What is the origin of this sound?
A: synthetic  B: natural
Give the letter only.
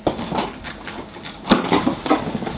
B